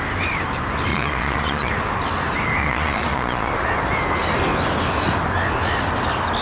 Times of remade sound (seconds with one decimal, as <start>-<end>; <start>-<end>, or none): 0.9-1.7; 2.6-3.5